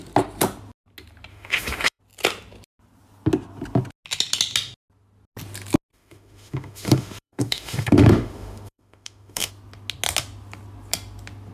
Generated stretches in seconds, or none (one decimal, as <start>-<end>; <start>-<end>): 1.3-2.0; 5.9-9.5